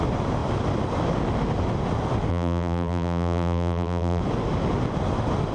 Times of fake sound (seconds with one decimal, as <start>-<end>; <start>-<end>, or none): 2.3-4.2